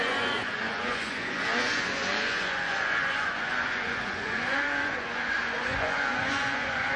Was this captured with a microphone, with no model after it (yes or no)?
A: no